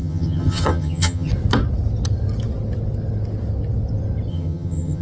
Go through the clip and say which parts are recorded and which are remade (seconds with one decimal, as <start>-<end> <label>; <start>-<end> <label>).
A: 0.0-1.3 remade; 1.3-4.3 recorded; 4.3-5.0 remade